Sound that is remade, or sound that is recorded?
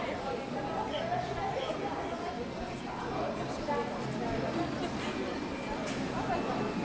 recorded